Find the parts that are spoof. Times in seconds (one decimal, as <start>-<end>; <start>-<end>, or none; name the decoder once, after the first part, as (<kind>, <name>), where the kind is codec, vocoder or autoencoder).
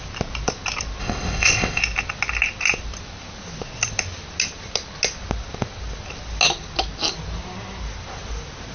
1.0-1.8 (codec, ZipCodec)